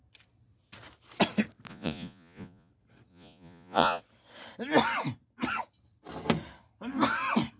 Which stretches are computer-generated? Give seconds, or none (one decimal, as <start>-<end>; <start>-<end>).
1.7-2.7; 3.1-4.0

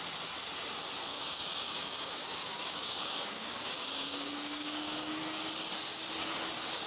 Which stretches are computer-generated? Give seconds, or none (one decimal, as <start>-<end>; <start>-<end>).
1.1-5.2